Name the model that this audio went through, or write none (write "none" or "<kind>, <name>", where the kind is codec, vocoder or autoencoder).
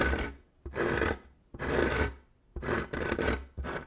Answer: none